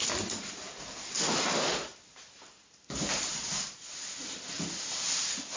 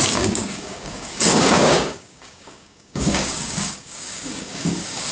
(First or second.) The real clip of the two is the first